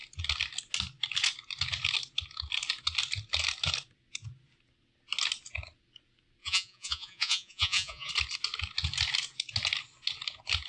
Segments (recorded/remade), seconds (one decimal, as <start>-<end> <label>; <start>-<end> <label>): 0.0-6.4 recorded; 6.4-8.1 remade; 8.1-10.7 recorded

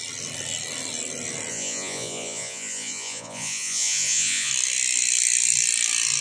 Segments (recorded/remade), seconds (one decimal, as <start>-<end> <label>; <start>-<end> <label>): 0.0-1.5 recorded; 1.5-4.5 remade; 4.5-6.2 recorded

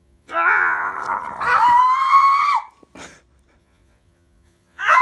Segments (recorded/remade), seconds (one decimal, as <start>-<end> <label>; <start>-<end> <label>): 0.0-0.9 remade; 0.9-3.6 recorded; 3.6-5.0 remade

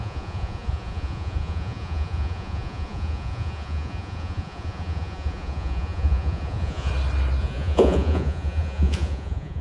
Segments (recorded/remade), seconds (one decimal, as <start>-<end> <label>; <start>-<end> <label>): 0.0-6.9 remade; 6.9-7.4 recorded; 7.4-9.6 remade